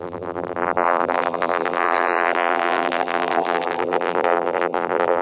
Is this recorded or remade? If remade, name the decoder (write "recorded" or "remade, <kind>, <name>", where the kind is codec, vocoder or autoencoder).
remade, vocoder, BigVGAN v2